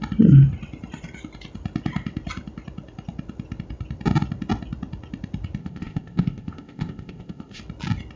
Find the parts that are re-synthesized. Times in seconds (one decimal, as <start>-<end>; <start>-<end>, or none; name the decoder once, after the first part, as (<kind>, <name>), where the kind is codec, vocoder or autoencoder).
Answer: 5.6-7.6 (codec, ZipCodec)